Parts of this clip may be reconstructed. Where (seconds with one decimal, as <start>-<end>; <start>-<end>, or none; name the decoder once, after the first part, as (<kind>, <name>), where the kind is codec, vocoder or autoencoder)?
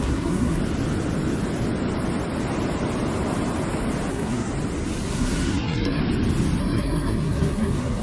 0.0-0.6 (codec, SNAC); 4.1-4.5; 5.1-6.0; 6.6-8.0